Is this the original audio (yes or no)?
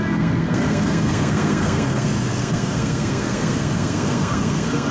no